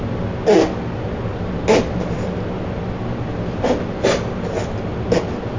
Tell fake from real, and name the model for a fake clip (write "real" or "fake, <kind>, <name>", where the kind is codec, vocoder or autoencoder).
real